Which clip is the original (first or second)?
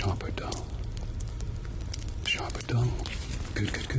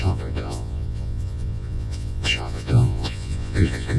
first